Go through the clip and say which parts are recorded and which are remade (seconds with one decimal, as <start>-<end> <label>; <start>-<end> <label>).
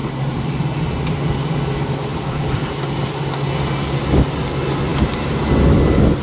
0.0-1.3 remade; 1.3-2.1 recorded; 2.1-2.6 remade; 2.6-4.9 recorded; 4.9-5.5 remade; 5.5-6.2 recorded